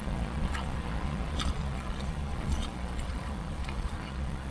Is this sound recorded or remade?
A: remade